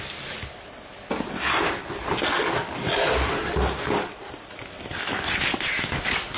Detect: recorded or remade recorded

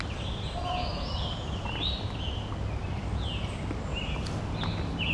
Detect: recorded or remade recorded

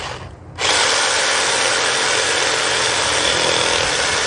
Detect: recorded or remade recorded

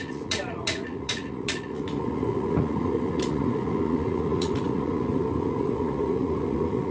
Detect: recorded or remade remade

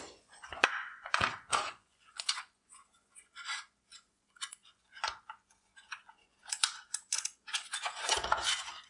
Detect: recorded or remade remade